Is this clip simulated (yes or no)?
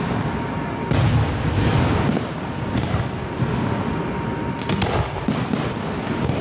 no